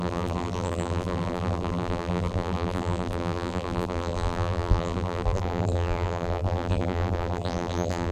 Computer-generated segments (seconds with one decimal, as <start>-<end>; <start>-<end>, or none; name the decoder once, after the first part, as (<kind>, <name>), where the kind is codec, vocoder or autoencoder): 0.0-8.1 (vocoder, BigVGAN v2)